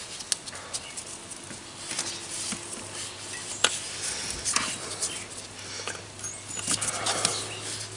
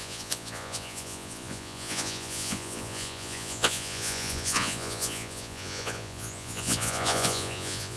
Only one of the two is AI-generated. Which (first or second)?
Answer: second